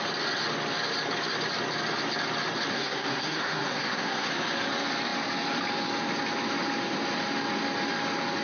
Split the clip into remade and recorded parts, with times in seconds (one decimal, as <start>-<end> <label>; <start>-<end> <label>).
0.0-2.7 recorded; 2.7-4.3 remade; 4.3-8.4 recorded

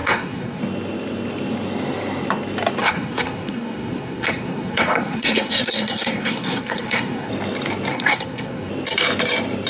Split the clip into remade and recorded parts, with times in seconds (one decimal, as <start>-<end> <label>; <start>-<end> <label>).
0.0-0.6 remade; 0.6-2.8 recorded; 2.8-7.3 remade; 7.3-7.9 recorded; 7.9-8.7 remade; 8.7-9.7 recorded

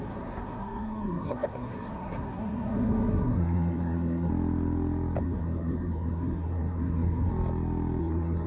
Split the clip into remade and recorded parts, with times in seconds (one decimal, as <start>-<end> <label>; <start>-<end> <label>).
0.0-4.3 remade; 4.3-5.2 recorded; 5.2-7.3 remade; 7.3-8.0 recorded; 8.0-8.5 remade

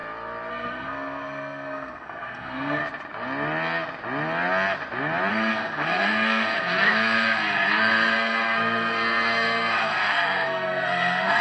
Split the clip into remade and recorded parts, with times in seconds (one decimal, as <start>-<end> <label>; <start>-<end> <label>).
0.0-0.5 recorded; 0.5-2.8 remade; 2.8-5.3 recorded; 5.3-11.4 remade

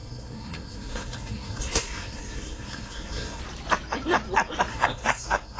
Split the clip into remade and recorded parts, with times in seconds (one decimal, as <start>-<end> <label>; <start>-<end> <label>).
0.0-3.4 remade; 3.4-4.7 recorded; 4.7-5.6 remade

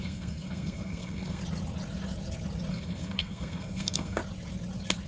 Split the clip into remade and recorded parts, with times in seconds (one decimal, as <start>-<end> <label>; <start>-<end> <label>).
0.0-1.4 remade; 1.4-2.7 recorded; 2.7-4.2 remade; 4.2-5.1 recorded